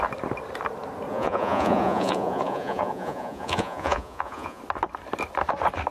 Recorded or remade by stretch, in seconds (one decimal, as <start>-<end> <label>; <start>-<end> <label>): 0.0-1.1 recorded; 1.1-4.6 remade; 4.6-5.9 recorded